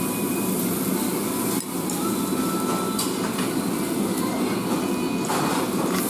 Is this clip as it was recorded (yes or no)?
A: yes